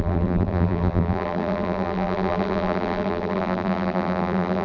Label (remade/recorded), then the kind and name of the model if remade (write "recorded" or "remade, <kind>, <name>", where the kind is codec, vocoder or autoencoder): remade, vocoder, BigVGAN v2